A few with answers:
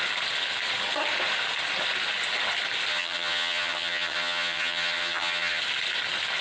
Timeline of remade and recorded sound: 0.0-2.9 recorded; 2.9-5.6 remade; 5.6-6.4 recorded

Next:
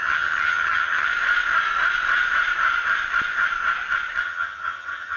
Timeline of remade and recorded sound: 0.0-1.1 remade; 1.1-4.2 recorded; 4.2-5.2 remade

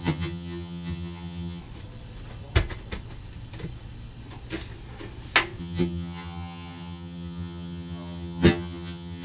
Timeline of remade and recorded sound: 0.0-1.6 remade; 1.6-5.6 recorded; 5.6-9.2 remade

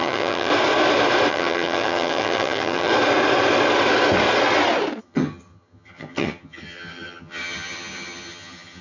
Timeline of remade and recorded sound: 0.0-0.5 remade; 0.5-1.3 recorded; 1.3-2.9 remade; 2.9-5.0 recorded; 5.0-8.8 remade